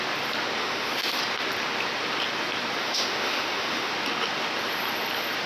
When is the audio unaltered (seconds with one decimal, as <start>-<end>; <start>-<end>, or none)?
0.0-0.6; 1.2-2.8; 3.9-5.5